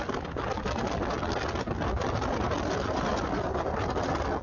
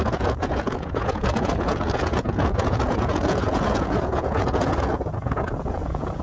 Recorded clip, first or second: first